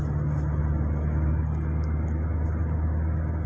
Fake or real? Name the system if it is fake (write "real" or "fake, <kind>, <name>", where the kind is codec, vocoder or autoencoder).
real